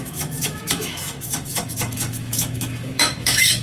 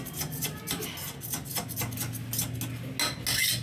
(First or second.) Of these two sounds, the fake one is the first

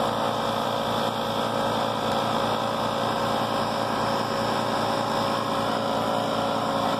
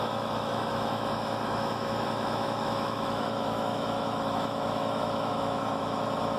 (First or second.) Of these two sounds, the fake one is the second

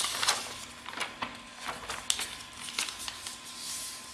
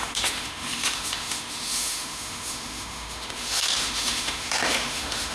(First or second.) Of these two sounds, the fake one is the second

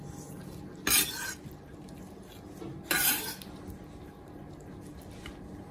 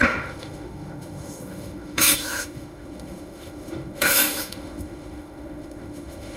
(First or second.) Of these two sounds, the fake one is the second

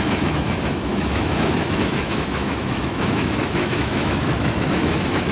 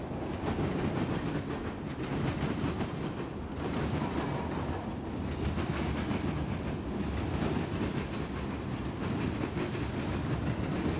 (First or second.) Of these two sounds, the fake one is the first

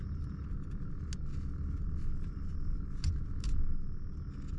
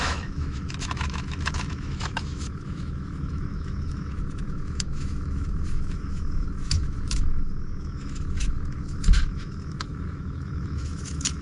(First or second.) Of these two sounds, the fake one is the second